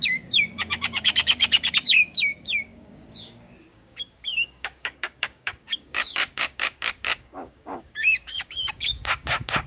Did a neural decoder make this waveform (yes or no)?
yes